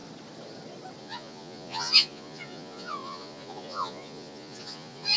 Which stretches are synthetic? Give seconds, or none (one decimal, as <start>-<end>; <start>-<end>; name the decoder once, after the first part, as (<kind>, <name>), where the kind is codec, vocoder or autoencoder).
1.0-5.2 (vocoder, Vocos)